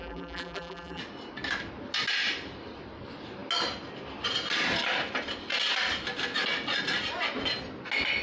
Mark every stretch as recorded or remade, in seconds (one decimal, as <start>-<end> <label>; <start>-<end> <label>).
0.0-1.0 remade; 1.0-8.2 recorded